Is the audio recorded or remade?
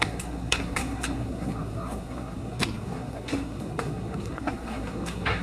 remade